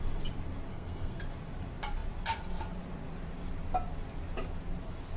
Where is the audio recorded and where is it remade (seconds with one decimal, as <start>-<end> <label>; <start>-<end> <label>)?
0.0-0.7 recorded; 0.7-1.2 remade; 1.2-5.2 recorded

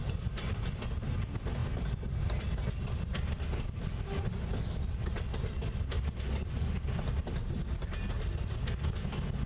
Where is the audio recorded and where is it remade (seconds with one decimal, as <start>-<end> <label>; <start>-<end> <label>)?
0.0-9.5 recorded

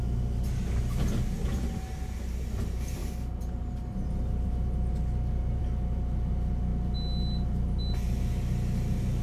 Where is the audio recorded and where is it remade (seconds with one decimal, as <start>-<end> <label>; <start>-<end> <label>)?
0.0-9.2 recorded